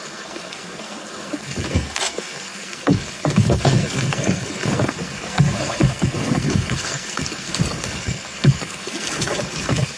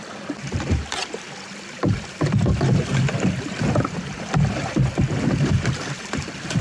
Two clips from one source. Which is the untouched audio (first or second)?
second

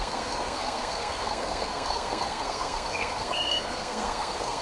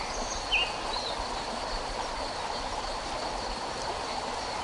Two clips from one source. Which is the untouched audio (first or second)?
second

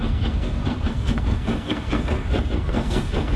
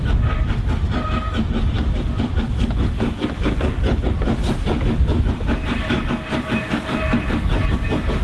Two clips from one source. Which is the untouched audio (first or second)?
second